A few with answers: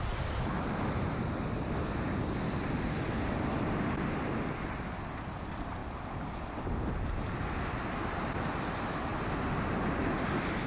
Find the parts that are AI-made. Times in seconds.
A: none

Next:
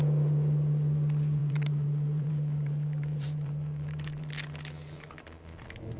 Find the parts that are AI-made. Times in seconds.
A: 1.4-4.3

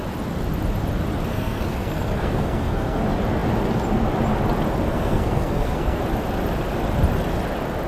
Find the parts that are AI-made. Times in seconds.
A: 1.3-3.0; 4.9-6.0

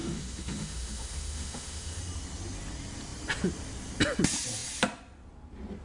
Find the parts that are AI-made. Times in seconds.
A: 0.0-2.0

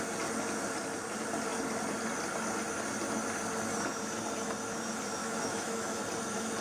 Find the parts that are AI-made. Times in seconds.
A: 5.2-6.0

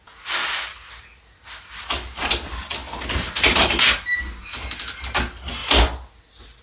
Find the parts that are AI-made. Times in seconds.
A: none